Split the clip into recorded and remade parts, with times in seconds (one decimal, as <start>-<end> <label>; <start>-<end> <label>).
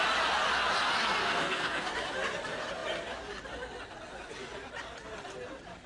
0.0-1.2 recorded; 1.2-1.9 remade; 1.9-5.9 recorded